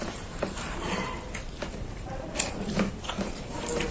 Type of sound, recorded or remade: remade